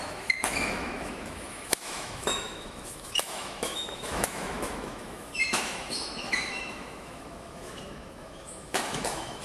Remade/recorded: remade